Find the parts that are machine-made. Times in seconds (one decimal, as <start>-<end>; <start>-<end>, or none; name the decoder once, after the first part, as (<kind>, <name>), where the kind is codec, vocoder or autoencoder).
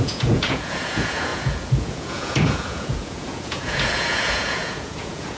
0.0-5.4 (vocoder, Vocos)